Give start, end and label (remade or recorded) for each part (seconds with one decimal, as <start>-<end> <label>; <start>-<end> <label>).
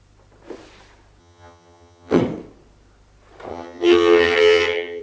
0.0-1.2 recorded; 1.2-2.2 remade; 2.2-3.5 recorded; 3.5-5.0 remade